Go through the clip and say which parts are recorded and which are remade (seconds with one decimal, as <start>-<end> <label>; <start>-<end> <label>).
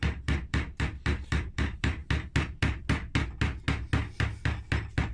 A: 0.0-2.0 remade; 2.0-5.1 recorded